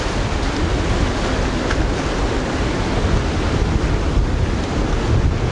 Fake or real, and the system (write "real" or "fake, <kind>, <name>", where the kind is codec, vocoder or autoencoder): real